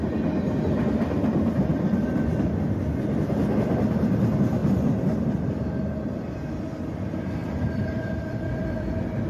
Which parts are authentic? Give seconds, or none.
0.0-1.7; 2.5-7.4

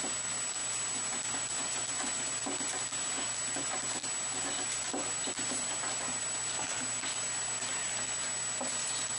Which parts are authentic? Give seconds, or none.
0.0-9.2

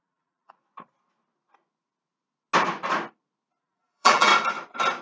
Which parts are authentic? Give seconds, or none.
0.6-3.6; 4.3-5.0

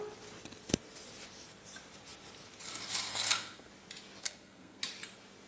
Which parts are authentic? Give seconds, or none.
0.0-3.1; 3.7-4.2; 4.8-5.5

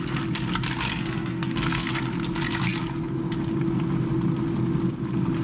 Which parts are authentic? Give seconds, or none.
0.0-0.9; 1.9-5.4

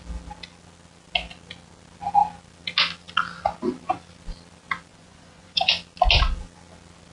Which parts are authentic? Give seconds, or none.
0.0-4.9; 5.7-7.1